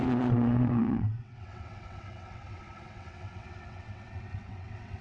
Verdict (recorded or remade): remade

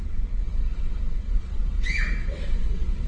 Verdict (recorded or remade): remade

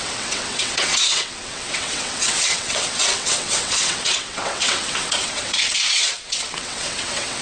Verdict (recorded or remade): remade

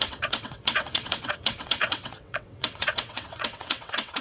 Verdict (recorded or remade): remade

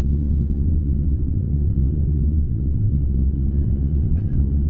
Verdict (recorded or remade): remade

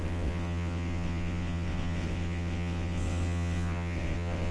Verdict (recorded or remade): remade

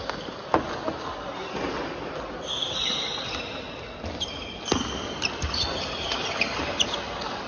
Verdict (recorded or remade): recorded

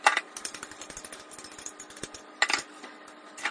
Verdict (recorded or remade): recorded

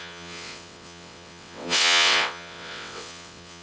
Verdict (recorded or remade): remade